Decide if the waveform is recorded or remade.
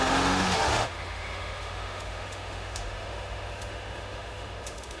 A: remade